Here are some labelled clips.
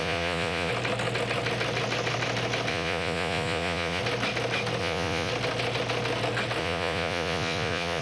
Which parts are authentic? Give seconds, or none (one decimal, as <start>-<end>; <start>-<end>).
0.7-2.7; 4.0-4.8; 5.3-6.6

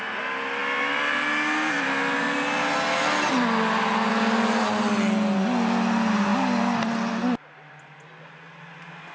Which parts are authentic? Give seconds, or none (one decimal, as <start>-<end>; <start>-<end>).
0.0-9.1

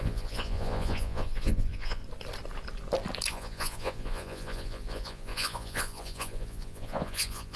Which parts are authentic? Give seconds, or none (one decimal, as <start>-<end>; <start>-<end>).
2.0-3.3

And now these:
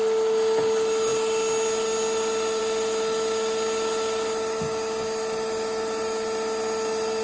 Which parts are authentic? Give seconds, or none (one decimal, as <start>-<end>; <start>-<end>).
0.0-7.2

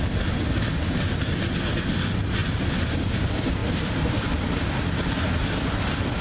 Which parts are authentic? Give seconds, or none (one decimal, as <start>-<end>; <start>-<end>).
0.0-2.4; 3.2-3.6

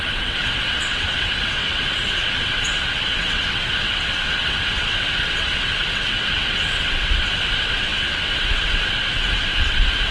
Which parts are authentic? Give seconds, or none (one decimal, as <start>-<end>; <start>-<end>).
none

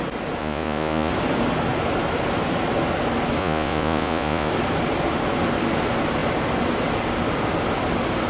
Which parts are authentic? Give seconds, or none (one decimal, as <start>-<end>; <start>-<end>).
0.0-0.4; 1.1-3.4; 4.5-8.3